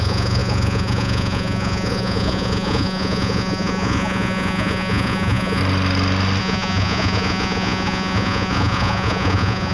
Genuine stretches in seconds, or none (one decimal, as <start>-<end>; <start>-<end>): 5.6-6.4